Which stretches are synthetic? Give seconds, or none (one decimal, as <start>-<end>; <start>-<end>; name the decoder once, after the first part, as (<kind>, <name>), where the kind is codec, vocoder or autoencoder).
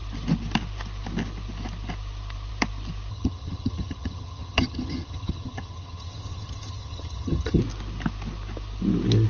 3.1-7.6 (vocoder, HiFi-GAN)